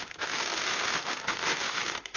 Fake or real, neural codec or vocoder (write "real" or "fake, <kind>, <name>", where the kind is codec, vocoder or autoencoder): fake, autoencoder, DAC-VAE